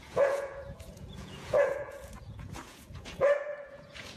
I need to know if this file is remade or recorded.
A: remade